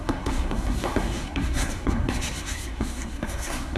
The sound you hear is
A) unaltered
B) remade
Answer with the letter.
B